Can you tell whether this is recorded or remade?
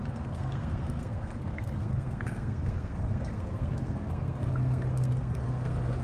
remade